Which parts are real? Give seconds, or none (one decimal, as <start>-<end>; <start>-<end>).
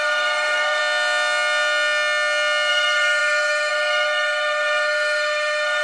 0.8-2.7